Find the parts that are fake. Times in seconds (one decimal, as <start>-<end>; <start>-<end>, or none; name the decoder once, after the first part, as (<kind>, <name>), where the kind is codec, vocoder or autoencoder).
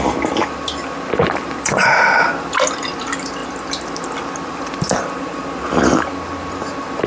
none